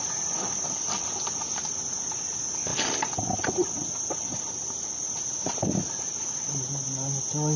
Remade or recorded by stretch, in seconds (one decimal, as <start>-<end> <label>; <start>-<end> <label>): 0.0-7.6 recorded